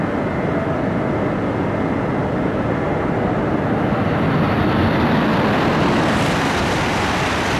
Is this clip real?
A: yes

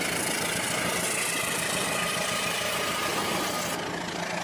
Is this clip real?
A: yes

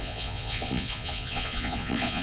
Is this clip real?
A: no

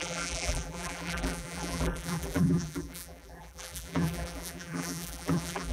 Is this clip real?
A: no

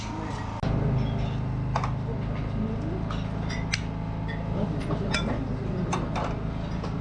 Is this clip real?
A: yes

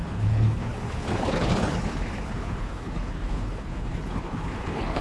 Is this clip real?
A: no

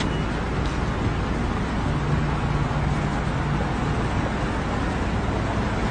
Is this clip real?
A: yes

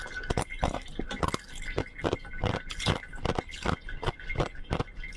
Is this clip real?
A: yes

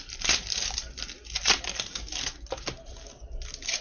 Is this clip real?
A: yes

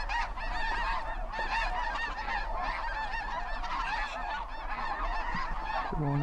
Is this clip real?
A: yes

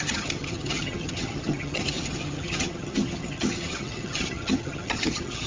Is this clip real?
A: no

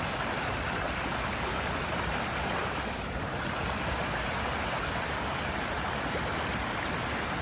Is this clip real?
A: yes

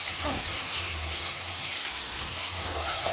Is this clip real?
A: no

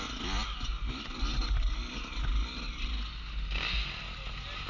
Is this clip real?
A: yes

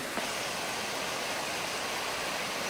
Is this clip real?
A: yes